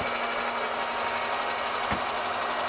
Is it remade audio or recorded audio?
recorded